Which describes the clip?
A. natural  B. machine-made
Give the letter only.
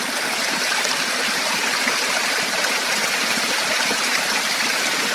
B